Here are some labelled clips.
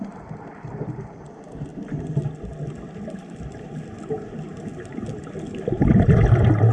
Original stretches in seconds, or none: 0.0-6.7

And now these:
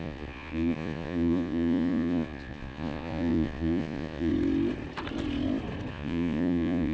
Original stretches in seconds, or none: 4.3-5.9

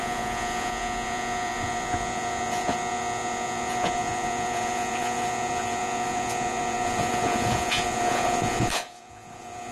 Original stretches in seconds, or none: none

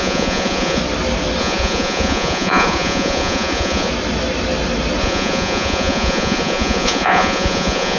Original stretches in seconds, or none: 0.8-1.4; 3.9-5.0